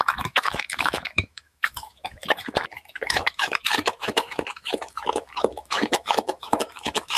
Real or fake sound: fake